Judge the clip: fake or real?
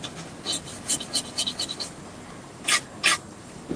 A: real